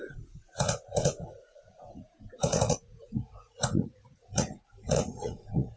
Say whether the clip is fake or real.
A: fake